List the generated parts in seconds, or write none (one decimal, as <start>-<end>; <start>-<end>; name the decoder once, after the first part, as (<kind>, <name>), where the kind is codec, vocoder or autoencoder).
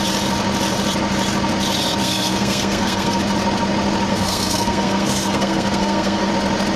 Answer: 2.0-3.2 (codec, SNAC); 4.1-6.3